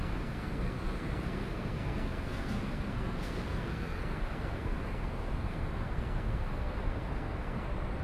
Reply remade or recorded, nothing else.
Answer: remade